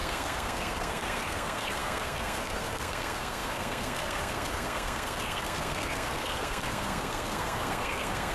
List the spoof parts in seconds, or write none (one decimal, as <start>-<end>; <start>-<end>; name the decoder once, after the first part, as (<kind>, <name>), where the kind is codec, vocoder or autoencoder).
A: 0.0-8.3 (codec, SNAC)